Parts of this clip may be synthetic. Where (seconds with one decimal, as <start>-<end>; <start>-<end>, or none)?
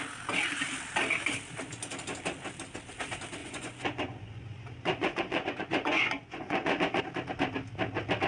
3.4-7.0